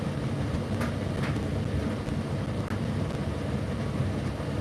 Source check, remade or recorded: recorded